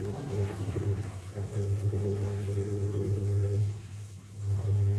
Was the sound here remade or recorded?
remade